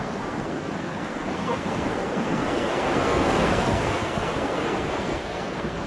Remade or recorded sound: remade